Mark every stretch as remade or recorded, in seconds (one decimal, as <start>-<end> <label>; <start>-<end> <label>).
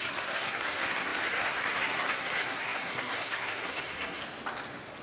0.0-4.2 remade; 4.2-5.0 recorded